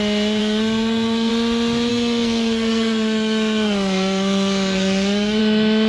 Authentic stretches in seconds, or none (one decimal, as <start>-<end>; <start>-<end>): 0.0-0.4; 1.3-1.9; 5.4-5.9